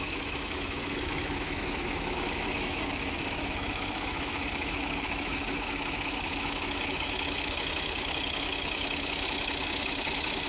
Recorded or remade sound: remade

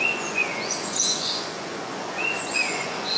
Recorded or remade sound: remade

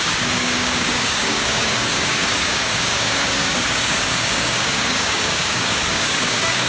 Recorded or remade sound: remade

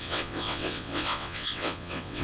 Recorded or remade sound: remade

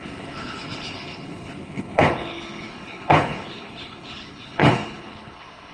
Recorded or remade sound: remade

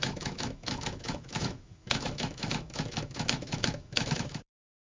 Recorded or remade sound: remade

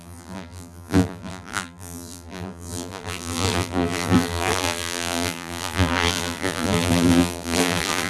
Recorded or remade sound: remade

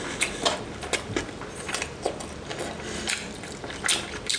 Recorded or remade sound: recorded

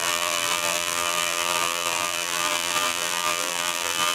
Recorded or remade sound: remade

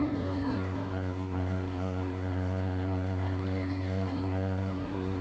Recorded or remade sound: remade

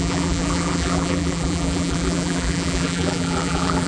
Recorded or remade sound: remade